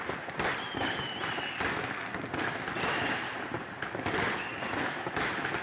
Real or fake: real